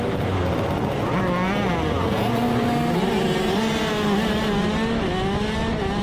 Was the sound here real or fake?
real